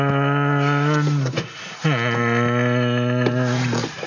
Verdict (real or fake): real